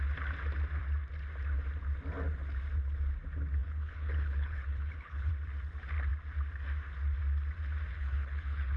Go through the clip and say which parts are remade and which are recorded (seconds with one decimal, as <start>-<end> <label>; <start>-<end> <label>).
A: 0.0-3.6 recorded; 3.6-5.3 remade; 5.3-7.9 recorded; 7.9-8.8 remade